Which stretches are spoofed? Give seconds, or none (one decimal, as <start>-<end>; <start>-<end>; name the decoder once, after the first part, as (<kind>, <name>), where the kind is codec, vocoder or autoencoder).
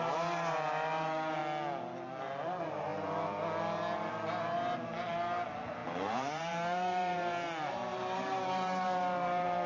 0.0-1.4 (vocoder, BigVGAN v2); 2.2-2.9; 4.1-9.7